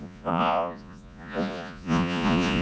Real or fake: fake